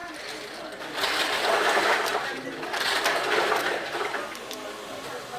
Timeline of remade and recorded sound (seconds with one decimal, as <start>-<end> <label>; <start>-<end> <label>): 0.0-0.5 remade; 0.5-5.4 recorded